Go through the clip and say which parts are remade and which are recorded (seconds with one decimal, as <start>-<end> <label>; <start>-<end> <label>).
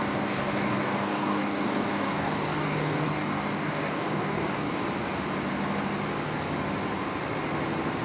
0.0-4.8 remade; 4.8-8.0 recorded